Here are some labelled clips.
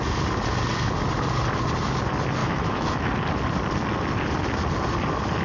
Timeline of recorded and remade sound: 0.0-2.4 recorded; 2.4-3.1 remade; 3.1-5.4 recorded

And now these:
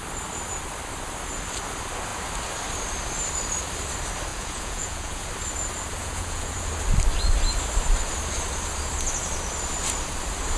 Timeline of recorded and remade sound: 0.0-4.3 recorded; 4.3-5.3 remade; 5.3-6.0 recorded; 6.0-6.7 remade; 6.7-10.6 recorded

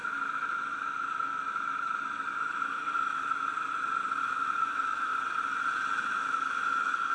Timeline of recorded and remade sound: 0.0-3.5 remade; 3.5-4.2 recorded; 4.2-5.1 remade; 5.1-6.1 recorded; 6.1-7.1 remade